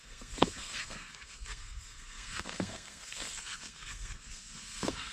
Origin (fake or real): fake